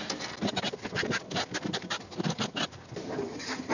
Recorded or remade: recorded